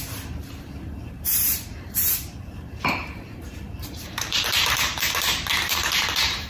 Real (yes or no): no